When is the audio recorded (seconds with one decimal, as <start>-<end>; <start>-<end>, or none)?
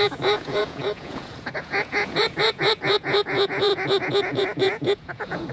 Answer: none